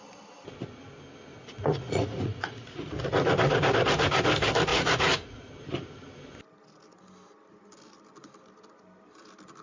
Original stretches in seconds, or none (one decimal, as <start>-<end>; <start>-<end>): 0.0-1.3; 2.9-4.7; 5.5-9.6